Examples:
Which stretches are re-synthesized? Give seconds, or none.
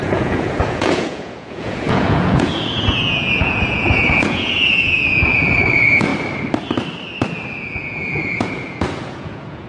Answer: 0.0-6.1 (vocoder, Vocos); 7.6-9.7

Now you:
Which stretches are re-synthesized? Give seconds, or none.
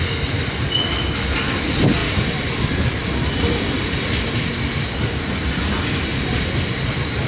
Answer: none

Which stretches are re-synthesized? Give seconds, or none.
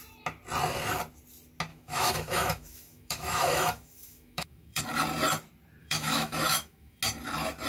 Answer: 1.7-4.8 (autoencoder, DAC-VAE); 5.8-7.0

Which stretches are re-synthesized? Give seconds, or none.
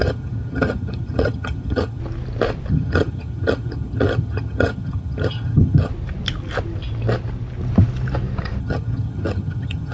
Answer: 0.0-2.0 (vocoder, HiFi-GAN); 2.7-5.9; 8.6-9.9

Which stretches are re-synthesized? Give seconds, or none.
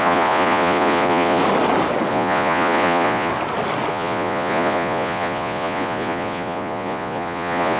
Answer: 0.0-1.4 (vocoder, Vocos); 2.1-3.3; 3.9-7.8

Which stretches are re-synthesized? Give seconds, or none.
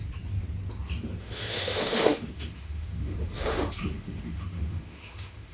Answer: 1.2-5.5 (autoencoder, DAC-VAE)